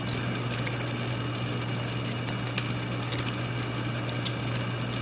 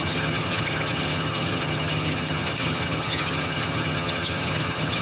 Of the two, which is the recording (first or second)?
first